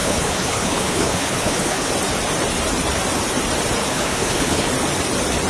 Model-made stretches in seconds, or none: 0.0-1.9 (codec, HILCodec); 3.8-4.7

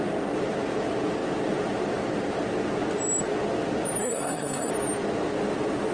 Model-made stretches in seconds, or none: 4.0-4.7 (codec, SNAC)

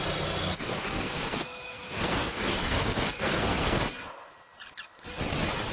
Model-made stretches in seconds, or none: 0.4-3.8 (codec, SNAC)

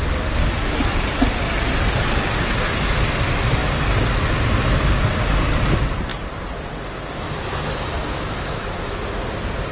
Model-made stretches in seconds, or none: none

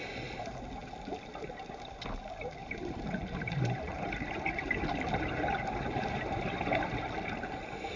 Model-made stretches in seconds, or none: 2.6-7.0 (vocoder, BigVGAN v2)